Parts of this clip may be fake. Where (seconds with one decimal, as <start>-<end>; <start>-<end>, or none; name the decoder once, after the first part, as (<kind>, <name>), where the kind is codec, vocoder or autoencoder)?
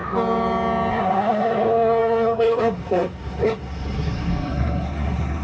0.9-5.4 (codec, SNAC)